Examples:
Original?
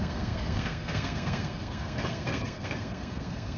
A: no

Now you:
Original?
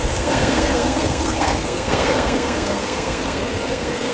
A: no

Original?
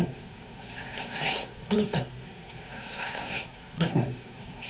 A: no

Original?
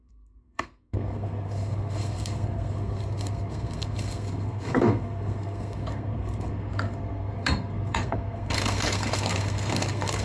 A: no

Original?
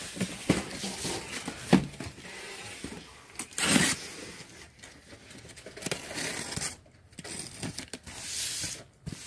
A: yes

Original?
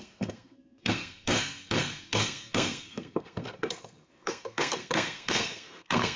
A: no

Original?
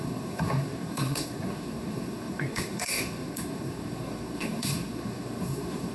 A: no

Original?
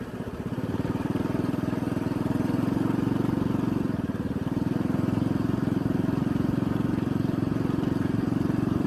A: yes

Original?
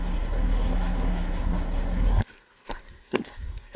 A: no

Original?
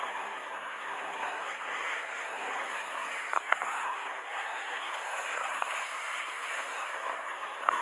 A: no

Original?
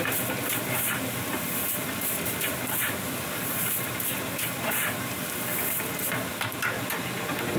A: yes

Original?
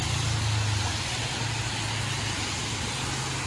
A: yes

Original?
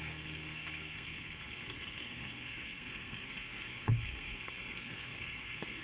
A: no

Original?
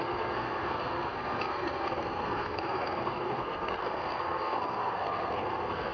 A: no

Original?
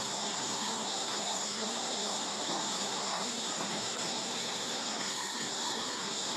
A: no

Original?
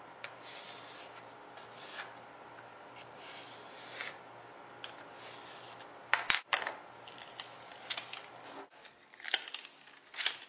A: yes